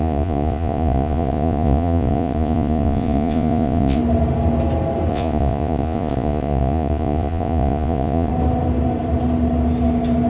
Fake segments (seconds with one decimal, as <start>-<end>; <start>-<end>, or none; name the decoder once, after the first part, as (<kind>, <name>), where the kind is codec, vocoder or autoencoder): 0.0-4.0 (vocoder, Vocos); 5.1-8.3